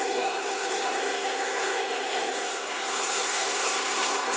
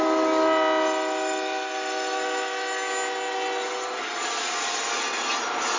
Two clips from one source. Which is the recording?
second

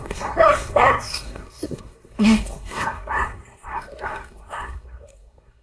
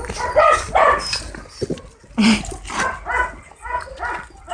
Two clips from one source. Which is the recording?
second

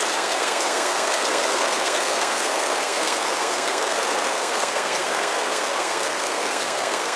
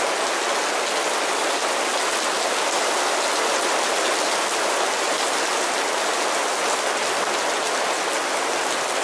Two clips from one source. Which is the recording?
second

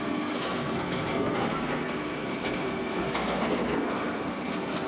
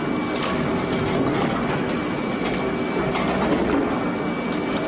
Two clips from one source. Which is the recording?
second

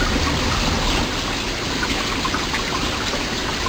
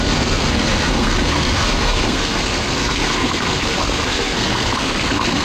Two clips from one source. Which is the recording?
first